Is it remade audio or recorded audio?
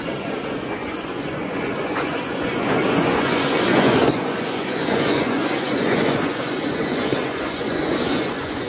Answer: remade